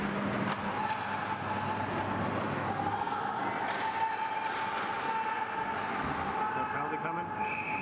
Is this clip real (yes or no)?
yes